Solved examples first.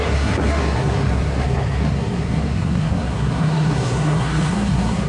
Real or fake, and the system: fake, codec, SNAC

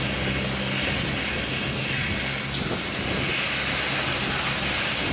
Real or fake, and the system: real